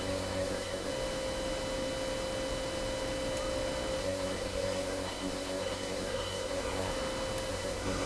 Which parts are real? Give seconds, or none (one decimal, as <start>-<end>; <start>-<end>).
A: 0.9-4.0; 6.9-7.5